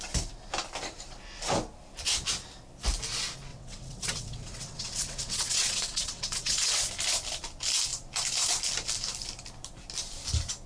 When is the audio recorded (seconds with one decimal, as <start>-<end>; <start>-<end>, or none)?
0.0-3.5; 6.9-10.7